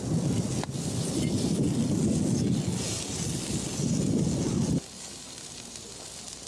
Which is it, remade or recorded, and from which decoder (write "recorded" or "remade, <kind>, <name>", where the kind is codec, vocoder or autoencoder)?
recorded